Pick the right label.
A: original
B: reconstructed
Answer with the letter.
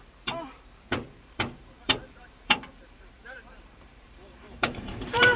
B